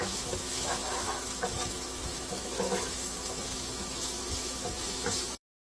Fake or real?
fake